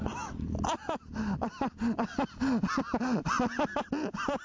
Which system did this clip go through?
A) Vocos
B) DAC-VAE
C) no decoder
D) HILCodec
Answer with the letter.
C